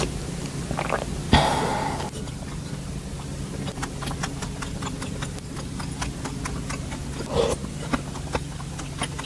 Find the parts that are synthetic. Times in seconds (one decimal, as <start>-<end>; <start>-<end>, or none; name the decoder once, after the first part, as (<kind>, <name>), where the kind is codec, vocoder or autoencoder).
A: none